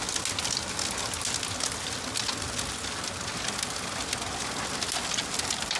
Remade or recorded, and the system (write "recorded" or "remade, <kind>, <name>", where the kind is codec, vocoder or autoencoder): recorded